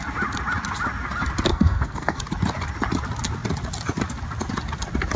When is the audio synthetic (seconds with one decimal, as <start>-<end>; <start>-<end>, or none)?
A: 1.5-2.2